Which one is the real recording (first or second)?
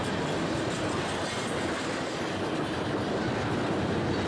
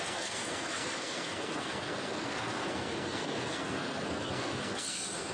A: first